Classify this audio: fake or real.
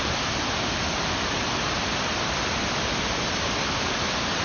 real